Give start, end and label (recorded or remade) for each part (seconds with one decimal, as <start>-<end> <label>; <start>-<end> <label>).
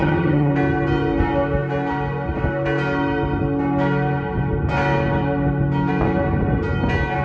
0.0-0.5 remade; 0.5-7.2 recorded